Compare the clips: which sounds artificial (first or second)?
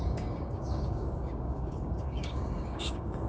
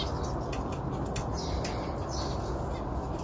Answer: first